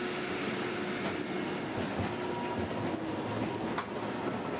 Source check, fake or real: real